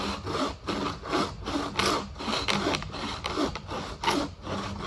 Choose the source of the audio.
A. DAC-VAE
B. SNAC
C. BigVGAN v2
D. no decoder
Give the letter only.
D